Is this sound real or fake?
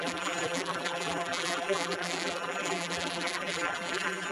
fake